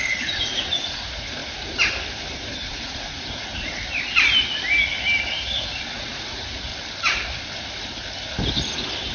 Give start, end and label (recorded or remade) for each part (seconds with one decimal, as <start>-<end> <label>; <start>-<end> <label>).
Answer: 0.0-1.4 remade; 1.4-2.7 recorded; 2.7-3.8 remade; 3.8-5.9 recorded; 5.9-6.7 remade; 6.7-9.1 recorded